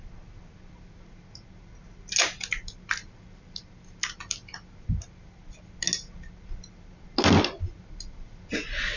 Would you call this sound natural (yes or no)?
yes